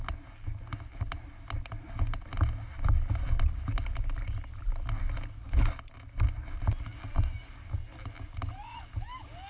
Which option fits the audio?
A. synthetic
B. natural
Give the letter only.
B